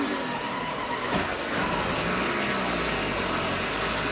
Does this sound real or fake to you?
real